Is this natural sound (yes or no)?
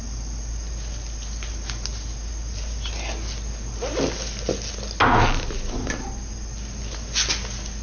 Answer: yes